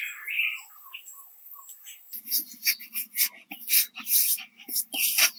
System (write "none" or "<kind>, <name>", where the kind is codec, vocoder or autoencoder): none